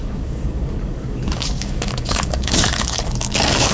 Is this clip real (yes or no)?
no